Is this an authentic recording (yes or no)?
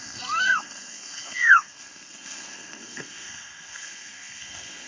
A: no